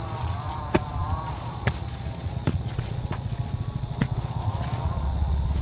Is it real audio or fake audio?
fake